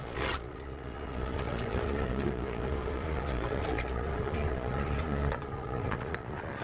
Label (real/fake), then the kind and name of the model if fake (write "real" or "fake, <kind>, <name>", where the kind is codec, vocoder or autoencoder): fake, vocoder, Vocos